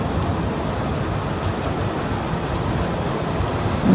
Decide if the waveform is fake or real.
real